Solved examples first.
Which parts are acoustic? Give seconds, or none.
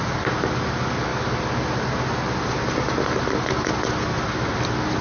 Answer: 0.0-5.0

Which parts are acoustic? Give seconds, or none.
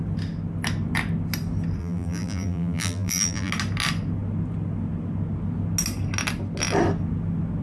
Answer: 0.0-1.8; 3.5-7.6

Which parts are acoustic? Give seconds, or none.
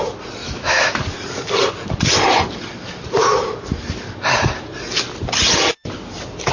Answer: 0.0-0.4; 0.9-6.5